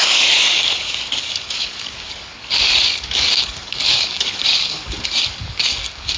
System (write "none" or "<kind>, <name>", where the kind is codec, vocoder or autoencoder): codec, DAC